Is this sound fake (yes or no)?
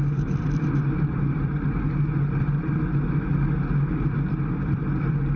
no